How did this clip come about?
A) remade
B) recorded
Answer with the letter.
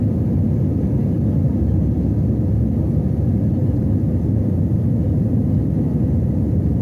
B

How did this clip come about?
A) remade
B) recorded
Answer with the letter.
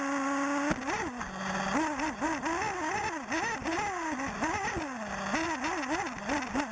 B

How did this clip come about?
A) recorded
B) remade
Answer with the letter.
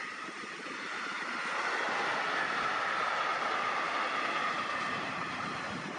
A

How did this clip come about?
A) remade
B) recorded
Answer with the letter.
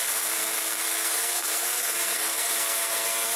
A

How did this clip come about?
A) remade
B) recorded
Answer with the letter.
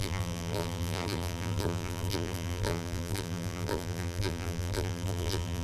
A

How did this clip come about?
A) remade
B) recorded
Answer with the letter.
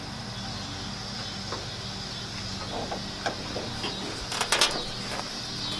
B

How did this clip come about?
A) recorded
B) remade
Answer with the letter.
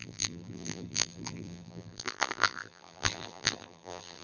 B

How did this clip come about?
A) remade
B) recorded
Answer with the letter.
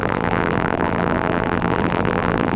A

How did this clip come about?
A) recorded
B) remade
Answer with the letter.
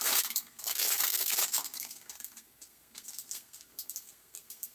B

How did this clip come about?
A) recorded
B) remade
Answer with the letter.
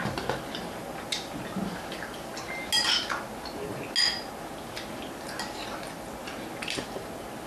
A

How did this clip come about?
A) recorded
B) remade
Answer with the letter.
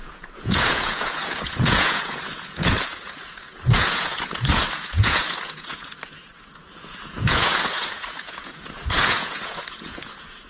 B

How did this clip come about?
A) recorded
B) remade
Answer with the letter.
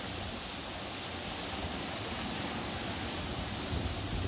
A